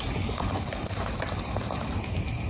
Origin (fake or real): fake